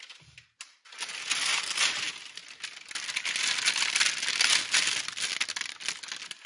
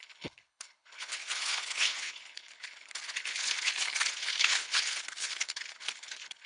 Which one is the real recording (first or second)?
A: first